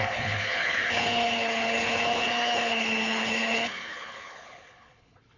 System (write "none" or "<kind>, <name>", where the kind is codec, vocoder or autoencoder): codec, HILCodec